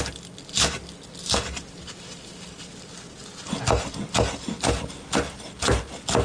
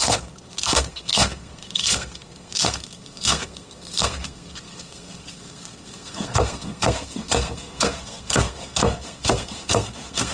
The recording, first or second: first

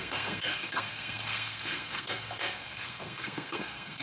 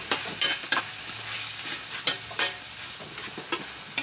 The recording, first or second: second